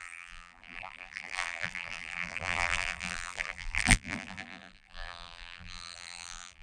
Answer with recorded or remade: remade